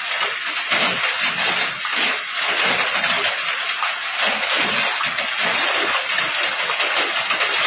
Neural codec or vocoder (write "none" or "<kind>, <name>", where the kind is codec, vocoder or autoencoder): none